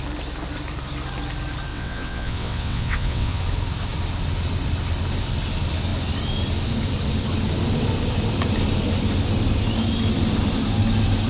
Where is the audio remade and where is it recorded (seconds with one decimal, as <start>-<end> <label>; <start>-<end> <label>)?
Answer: 0.0-1.7 recorded; 1.7-3.4 remade; 3.4-11.3 recorded